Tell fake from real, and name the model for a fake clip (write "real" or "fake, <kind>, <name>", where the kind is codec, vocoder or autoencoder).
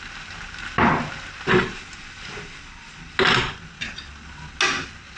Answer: real